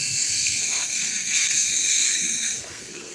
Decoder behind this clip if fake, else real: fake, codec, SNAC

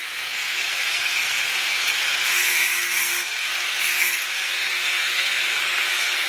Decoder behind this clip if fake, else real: fake, codec, SNAC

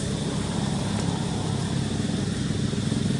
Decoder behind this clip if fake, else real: real